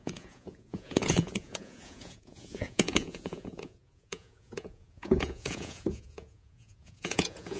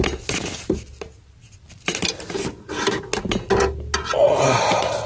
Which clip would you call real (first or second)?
second